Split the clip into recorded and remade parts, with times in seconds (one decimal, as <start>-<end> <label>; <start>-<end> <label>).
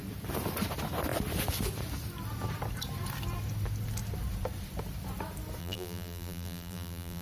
0.0-5.6 recorded; 5.6-7.2 remade